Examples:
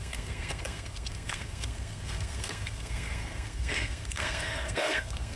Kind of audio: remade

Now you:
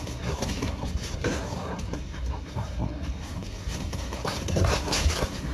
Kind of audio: remade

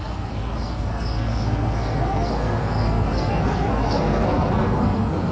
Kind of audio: remade